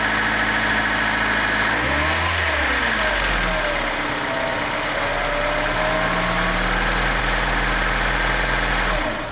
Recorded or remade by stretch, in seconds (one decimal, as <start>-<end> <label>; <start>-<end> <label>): 0.0-9.3 recorded